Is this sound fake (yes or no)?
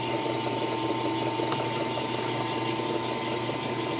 no